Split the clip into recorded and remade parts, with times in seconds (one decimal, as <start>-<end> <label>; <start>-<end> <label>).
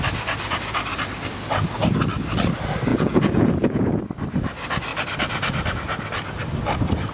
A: 0.0-2.9 recorded; 2.9-4.0 remade; 4.0-7.1 recorded